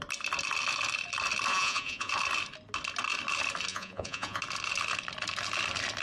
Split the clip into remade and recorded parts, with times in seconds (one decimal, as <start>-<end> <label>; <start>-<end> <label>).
0.0-1.5 recorded; 1.5-2.1 remade; 2.1-3.7 recorded; 3.7-4.4 remade; 4.4-6.0 recorded